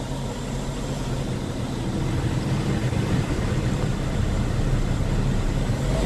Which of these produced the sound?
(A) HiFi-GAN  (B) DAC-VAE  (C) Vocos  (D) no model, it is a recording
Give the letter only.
D